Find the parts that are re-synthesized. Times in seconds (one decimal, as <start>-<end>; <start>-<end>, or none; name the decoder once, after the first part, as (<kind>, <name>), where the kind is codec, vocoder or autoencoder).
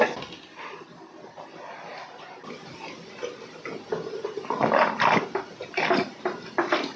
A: none